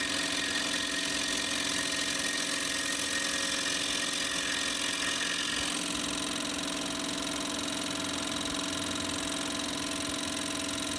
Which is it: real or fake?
real